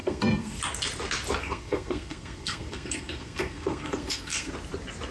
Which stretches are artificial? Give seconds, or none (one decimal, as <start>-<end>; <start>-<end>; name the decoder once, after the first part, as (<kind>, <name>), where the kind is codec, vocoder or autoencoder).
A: 0.0-0.6 (codec, SNAC); 1.4-4.5